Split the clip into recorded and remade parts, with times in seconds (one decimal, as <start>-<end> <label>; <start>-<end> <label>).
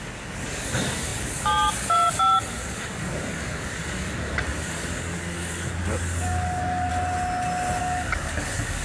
0.0-6.9 remade; 6.9-7.8 recorded; 7.8-8.8 remade